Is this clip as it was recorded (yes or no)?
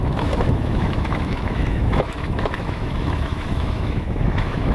no